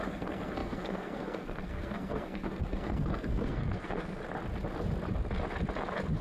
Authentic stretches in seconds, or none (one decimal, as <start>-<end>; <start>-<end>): 4.2-6.2